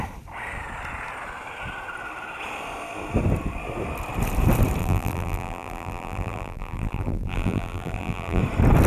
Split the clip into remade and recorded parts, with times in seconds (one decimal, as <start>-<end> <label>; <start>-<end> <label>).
0.0-4.8 recorded; 4.8-8.4 remade; 8.4-8.9 recorded

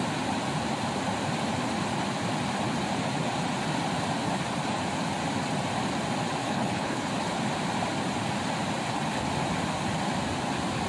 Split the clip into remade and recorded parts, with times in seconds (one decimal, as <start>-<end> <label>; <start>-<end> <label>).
0.0-6.4 recorded; 6.4-7.1 remade; 7.1-10.9 recorded

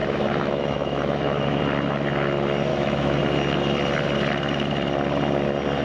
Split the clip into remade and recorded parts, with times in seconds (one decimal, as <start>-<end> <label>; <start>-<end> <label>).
0.0-1.6 remade; 1.6-2.7 recorded; 2.7-3.2 remade; 3.2-5.8 recorded